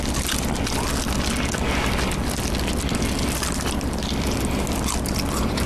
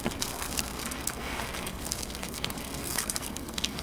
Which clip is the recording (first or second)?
first